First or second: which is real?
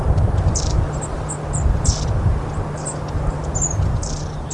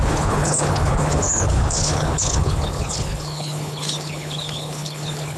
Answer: first